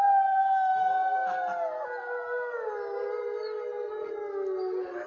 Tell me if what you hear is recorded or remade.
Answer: recorded